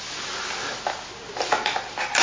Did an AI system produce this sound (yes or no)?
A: no